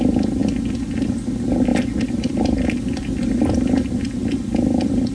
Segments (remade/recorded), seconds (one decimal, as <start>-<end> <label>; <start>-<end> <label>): 0.0-4.2 recorded; 4.2-5.1 remade